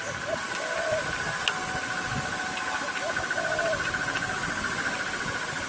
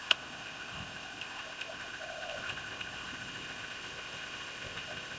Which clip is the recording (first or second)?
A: first